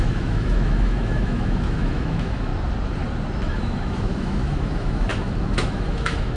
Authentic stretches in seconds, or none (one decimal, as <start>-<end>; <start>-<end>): 2.5-3.5